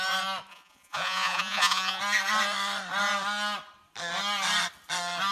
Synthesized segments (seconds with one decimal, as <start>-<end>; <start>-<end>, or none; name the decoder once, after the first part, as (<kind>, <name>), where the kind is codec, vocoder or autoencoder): 0.5-2.0 (vocoder, Vocos)